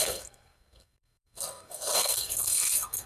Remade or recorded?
remade